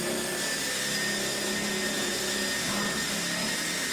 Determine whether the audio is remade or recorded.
recorded